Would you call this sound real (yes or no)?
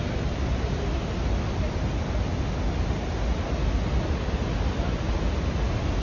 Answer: yes